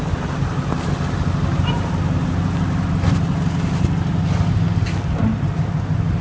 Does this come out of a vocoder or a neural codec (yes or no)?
no